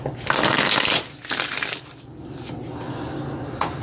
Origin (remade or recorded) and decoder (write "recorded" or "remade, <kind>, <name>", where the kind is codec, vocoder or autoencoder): recorded